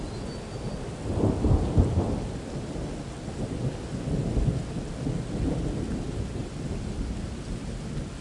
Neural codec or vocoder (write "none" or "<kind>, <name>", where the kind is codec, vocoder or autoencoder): none